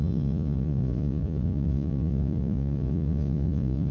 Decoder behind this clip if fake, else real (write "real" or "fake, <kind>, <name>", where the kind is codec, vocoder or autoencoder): fake, vocoder, Vocos